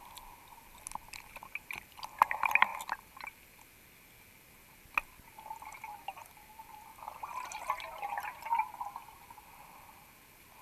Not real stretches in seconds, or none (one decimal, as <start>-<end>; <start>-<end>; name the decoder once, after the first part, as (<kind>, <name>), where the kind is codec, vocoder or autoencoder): none